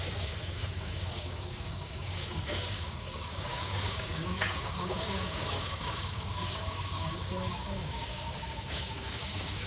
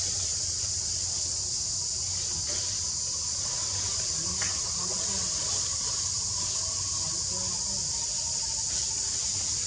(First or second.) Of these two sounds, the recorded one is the second